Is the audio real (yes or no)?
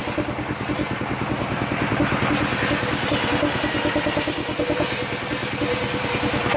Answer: yes